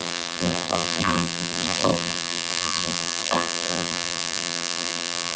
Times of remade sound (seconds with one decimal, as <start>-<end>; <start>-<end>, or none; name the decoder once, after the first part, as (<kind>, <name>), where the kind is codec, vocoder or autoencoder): 0.0-5.4 (vocoder, BigVGAN v2)